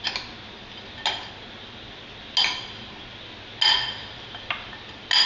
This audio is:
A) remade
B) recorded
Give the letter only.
B